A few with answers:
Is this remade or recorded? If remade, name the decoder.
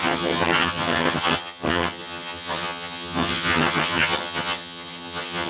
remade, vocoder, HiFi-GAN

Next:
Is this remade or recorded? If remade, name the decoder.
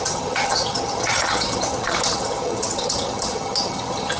remade, vocoder, HiFi-GAN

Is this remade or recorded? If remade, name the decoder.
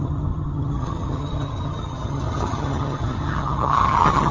remade, vocoder, HiFi-GAN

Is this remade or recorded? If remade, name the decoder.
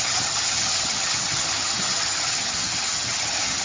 remade, vocoder, HiFi-GAN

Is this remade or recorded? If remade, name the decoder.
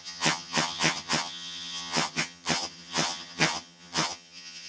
remade, vocoder, HiFi-GAN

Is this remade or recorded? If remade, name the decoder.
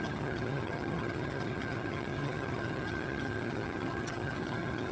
remade, vocoder, HiFi-GAN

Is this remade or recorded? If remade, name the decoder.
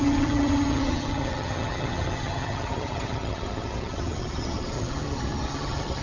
remade, vocoder, HiFi-GAN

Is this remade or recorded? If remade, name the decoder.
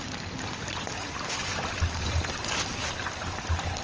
recorded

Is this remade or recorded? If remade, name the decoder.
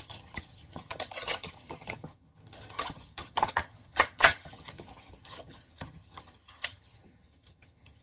remade, vocoder, HiFi-GAN